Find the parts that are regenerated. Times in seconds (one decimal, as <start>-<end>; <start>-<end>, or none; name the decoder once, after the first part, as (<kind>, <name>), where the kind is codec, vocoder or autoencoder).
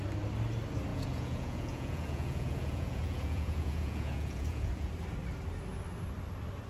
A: 0.9-4.9 (vocoder, Vocos)